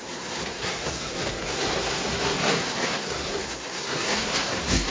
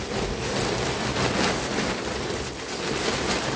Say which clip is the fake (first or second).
first